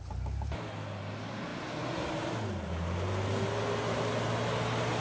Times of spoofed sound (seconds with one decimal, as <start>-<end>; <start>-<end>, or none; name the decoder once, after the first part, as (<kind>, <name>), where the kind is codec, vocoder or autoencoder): none